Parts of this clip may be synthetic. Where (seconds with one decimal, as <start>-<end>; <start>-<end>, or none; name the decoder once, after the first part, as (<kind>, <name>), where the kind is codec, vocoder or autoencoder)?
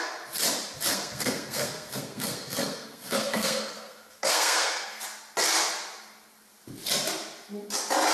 0.9-5.0 (codec, SNAC)